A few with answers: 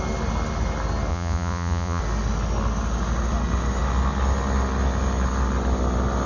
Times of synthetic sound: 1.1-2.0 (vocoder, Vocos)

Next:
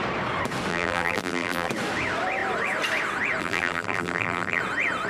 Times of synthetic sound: 0.7-1.7 (vocoder, BigVGAN v2); 3.4-4.6

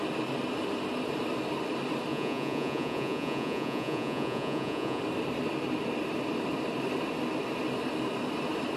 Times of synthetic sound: 2.1-5.0 (vocoder, Vocos)

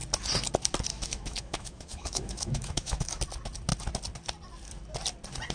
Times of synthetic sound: 0.9-3.2 (autoencoder, DAC-VAE)

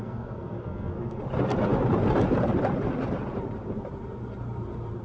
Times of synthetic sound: 0.0-1.2 (codec, SNAC)

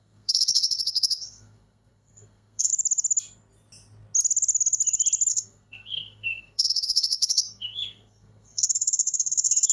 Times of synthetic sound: 0.0-2.7 (codec, SNAC); 5.3-9.7